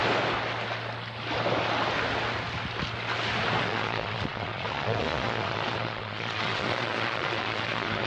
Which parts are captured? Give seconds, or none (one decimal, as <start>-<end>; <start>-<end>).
0.0-3.6